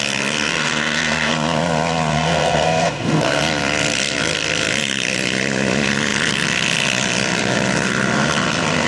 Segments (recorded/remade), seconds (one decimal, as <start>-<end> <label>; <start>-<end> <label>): 0.0-0.5 recorded; 0.5-1.3 remade; 1.3-2.1 recorded; 2.1-3.4 remade; 3.4-8.9 recorded